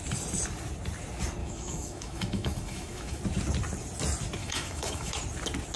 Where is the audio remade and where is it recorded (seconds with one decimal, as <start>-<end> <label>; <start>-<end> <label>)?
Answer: 0.0-1.4 recorded; 1.4-3.2 remade; 3.2-4.4 recorded; 4.4-5.1 remade; 5.1-5.8 recorded